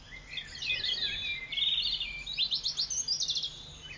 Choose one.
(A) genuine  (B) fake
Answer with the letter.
A